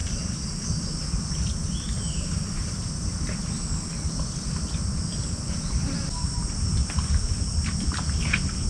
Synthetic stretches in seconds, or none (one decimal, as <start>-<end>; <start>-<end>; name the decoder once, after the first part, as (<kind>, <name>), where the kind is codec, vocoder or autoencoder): none